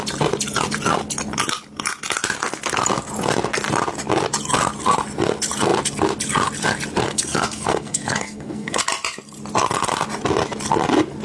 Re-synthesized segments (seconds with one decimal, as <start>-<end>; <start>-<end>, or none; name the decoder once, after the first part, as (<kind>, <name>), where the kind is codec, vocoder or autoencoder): 7.0-8.8 (codec, SNAC)